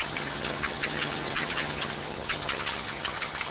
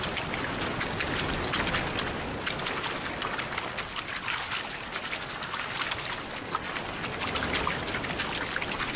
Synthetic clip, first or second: first